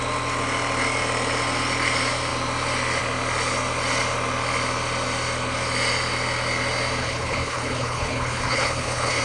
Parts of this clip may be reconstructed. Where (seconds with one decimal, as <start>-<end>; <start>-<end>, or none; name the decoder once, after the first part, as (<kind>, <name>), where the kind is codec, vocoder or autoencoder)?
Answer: 7.0-9.2 (codec, HILCodec)